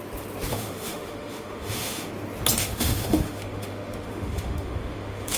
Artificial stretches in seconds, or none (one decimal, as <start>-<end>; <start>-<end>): 0.5-2.1; 2.6-5.4